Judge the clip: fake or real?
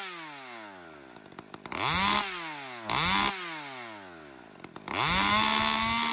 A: real